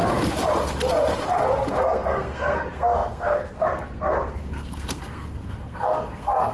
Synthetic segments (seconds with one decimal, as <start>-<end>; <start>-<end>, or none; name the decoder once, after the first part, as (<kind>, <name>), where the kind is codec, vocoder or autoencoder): 1.7-6.5 (codec, SNAC)